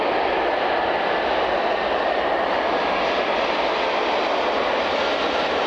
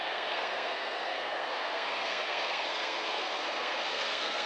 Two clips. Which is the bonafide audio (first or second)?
first